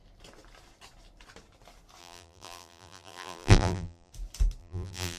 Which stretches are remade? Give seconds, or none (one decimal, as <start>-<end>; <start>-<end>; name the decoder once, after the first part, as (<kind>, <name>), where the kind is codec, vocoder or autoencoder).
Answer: 2.0-4.1 (vocoder, BigVGAN v2); 4.6-5.2